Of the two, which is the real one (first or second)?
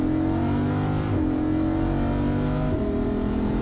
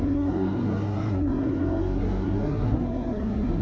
first